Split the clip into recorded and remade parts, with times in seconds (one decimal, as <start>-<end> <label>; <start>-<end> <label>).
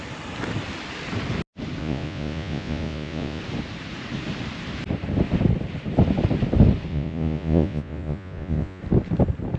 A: 0.0-1.8 recorded; 1.8-3.4 remade; 3.4-6.9 recorded; 6.9-8.8 remade; 8.8-9.6 recorded